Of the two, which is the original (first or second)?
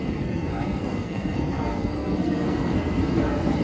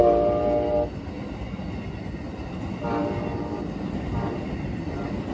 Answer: second